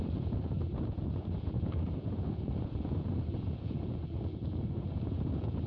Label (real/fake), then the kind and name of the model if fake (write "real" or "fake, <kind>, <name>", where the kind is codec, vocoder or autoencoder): fake, vocoder, Vocos